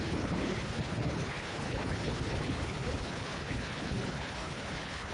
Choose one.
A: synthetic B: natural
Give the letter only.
A